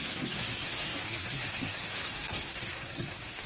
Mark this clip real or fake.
fake